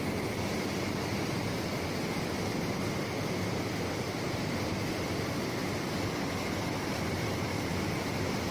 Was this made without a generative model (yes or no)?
yes